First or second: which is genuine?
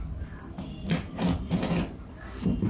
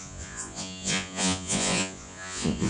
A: first